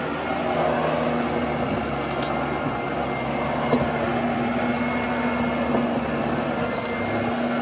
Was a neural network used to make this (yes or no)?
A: no